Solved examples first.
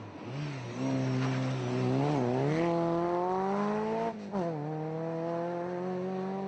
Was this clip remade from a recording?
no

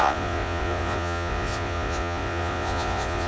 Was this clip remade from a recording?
yes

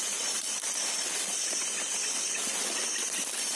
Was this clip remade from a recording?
yes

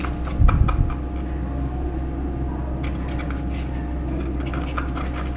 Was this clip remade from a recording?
no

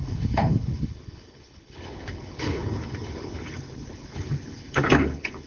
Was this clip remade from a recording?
yes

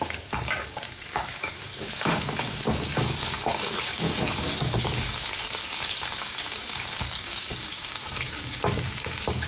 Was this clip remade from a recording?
yes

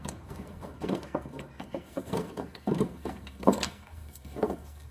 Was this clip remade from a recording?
yes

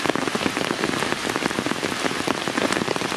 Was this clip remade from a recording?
no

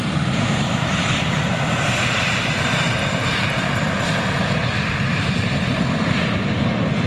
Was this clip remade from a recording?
yes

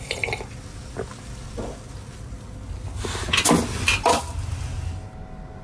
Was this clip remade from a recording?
no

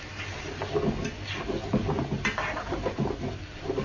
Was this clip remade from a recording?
no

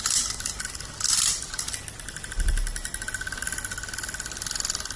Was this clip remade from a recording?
no